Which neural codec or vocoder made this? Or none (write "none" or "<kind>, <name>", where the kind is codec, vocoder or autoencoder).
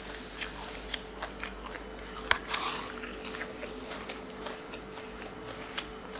none